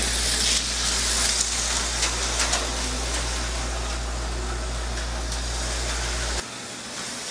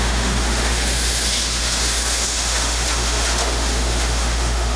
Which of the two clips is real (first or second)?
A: first